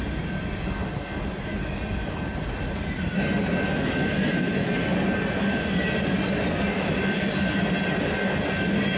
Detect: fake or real real